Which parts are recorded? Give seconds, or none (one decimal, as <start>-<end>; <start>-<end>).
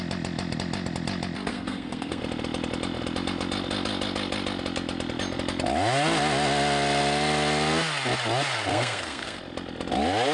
0.0-1.5; 2.2-8.7; 9.4-10.3